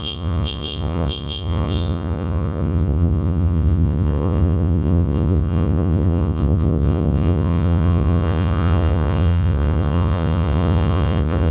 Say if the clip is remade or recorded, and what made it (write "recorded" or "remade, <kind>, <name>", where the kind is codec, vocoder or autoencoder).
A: remade, vocoder, Vocos